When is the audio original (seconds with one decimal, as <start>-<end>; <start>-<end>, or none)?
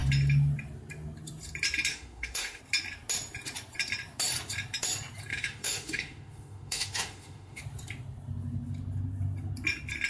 0.0-1.9; 2.6-5.3; 7.6-10.1